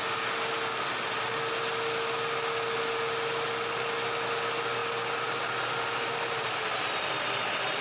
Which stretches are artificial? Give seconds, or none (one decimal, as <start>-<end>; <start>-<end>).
none